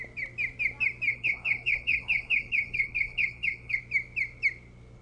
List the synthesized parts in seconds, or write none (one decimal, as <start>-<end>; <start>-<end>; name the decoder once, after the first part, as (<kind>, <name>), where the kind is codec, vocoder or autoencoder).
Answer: 1.1-3.8 (codec, HILCodec)